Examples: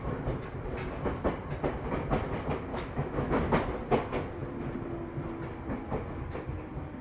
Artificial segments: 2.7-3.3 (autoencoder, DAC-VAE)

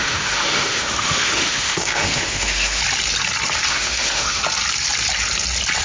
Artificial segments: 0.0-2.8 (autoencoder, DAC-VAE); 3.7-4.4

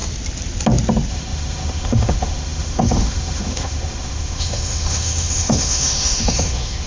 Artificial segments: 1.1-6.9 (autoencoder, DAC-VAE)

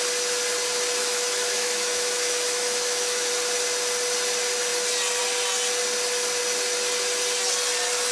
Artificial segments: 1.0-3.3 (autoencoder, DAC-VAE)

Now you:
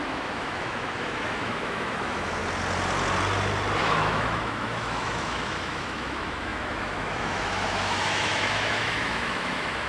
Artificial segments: 0.0-2.4 (autoencoder, DAC-VAE); 3.8-9.9

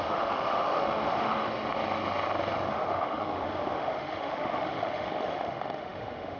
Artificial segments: 0.0-1.5 (autoencoder, DAC-VAE); 2.7-6.4